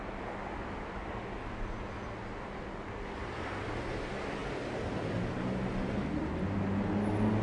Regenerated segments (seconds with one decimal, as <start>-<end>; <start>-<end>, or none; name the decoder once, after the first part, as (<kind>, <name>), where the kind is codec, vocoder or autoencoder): none